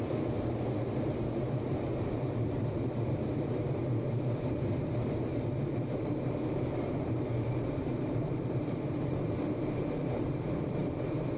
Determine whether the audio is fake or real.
fake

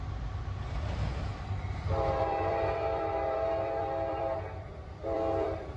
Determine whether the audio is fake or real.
fake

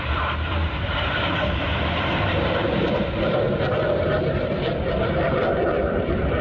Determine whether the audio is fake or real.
fake